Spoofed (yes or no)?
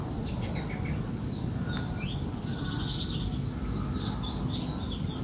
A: no